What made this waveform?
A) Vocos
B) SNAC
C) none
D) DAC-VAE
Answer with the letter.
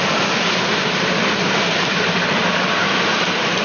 C